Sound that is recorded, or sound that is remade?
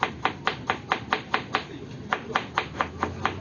recorded